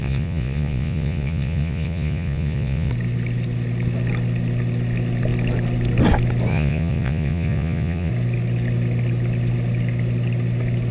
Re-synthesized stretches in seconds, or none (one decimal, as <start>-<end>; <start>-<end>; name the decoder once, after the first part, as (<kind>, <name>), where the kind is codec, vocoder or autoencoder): 0.0-2.9 (vocoder, Vocos); 6.5-8.1